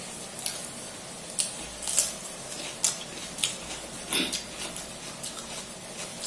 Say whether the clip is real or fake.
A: real